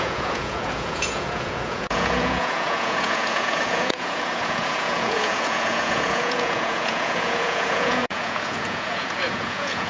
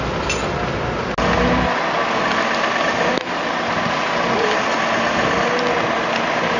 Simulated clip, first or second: first